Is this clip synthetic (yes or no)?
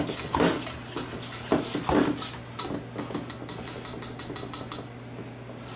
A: no